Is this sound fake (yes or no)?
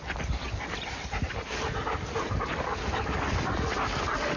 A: no